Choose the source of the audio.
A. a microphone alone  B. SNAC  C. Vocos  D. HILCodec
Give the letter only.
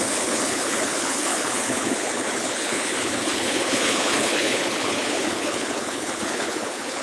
D